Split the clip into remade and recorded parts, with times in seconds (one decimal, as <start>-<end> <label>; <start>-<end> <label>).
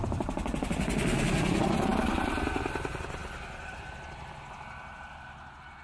0.0-5.8 recorded